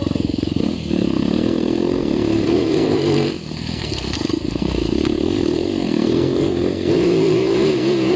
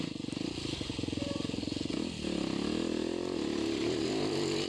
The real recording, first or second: second